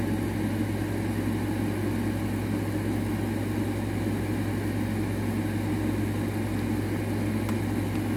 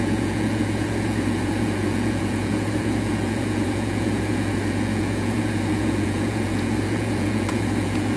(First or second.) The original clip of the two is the first